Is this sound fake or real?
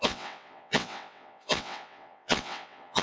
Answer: fake